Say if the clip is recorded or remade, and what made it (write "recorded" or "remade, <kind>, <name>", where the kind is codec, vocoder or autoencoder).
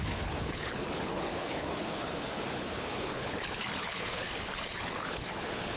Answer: remade, codec, HILCodec